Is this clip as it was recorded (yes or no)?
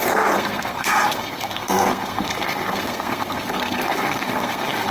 no